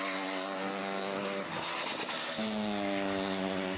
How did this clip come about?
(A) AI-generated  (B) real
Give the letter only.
B